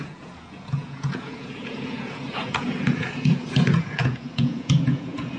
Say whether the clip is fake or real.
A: fake